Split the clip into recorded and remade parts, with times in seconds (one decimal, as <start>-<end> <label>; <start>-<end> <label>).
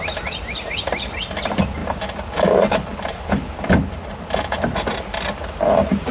0.0-6.1 recorded